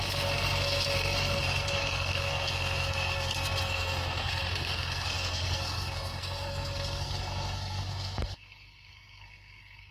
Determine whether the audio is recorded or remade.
remade